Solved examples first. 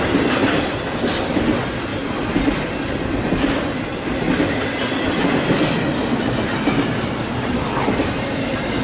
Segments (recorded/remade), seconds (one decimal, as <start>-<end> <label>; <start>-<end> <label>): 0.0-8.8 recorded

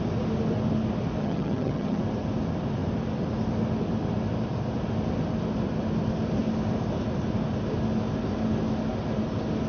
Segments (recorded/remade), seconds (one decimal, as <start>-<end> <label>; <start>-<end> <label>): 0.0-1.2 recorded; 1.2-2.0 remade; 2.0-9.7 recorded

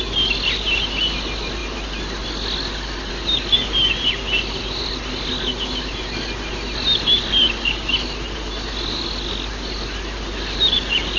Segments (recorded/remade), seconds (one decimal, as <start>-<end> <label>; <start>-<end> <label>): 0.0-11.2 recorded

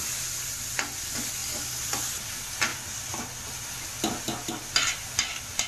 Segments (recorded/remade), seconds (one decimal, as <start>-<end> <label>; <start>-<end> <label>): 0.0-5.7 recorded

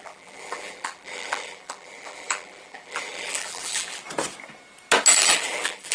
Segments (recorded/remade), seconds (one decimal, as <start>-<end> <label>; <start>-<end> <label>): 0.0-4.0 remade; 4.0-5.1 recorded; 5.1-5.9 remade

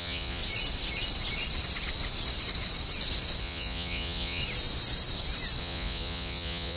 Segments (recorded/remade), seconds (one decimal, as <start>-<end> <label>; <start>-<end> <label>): 0.0-0.4 remade; 0.4-3.4 recorded; 3.4-4.4 remade; 4.4-5.6 recorded; 5.6-6.8 remade

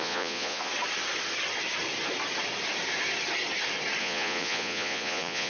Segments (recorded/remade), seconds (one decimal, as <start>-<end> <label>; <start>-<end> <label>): 0.0-0.7 remade; 0.7-4.0 recorded; 4.0-5.5 remade

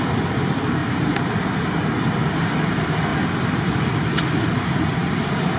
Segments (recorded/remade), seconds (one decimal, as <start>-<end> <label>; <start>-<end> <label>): 0.0-0.8 recorded; 0.8-2.5 remade; 2.5-5.0 recorded; 5.0-5.6 remade